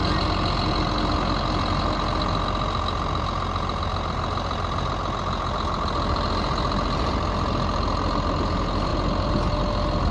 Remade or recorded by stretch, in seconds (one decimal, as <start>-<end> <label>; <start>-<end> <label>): 0.0-10.1 recorded